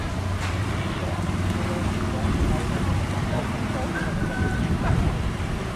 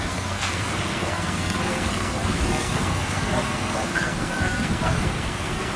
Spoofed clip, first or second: second